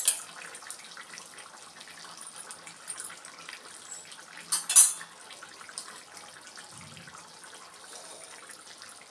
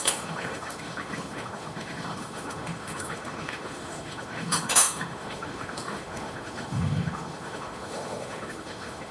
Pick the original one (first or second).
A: first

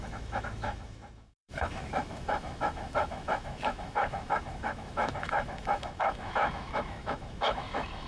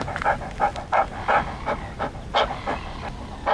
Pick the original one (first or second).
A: second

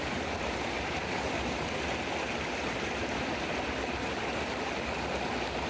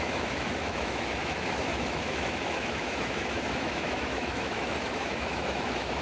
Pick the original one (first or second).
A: first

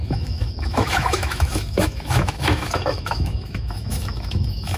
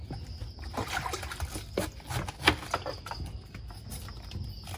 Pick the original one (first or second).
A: second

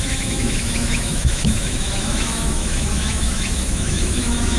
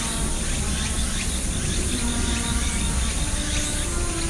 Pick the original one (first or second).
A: second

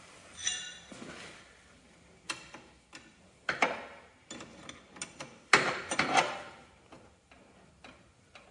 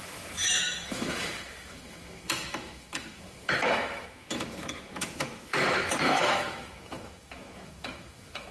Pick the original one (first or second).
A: first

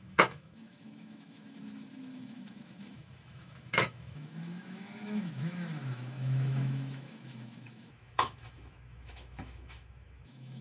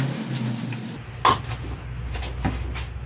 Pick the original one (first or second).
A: second